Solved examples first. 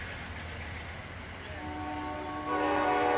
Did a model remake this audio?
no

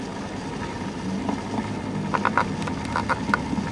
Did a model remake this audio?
no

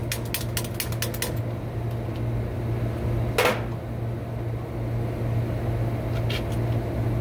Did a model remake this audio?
no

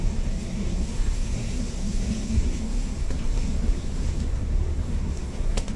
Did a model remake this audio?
yes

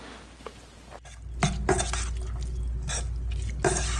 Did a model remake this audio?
no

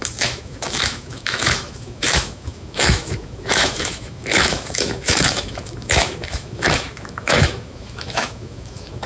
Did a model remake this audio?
yes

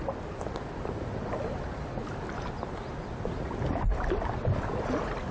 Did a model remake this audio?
no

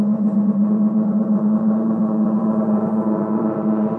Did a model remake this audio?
yes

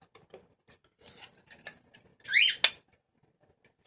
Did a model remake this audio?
no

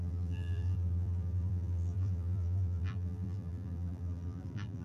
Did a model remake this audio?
yes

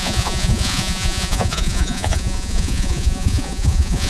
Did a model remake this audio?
yes